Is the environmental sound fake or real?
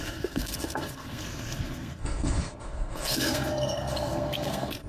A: fake